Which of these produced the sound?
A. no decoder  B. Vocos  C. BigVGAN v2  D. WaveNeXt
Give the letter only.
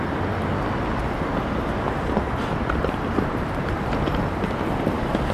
A